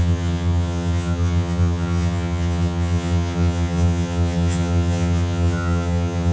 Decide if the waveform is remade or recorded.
remade